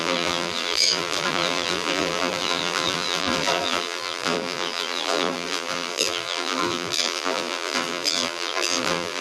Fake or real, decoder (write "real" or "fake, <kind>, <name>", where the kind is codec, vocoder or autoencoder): fake, vocoder, BigVGAN v2